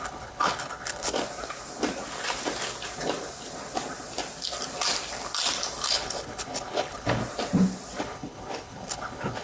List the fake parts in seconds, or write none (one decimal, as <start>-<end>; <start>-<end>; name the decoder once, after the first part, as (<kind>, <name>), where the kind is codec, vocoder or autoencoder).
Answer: 0.0-1.1 (codec, HILCodec); 5.9-7.2; 8.0-9.4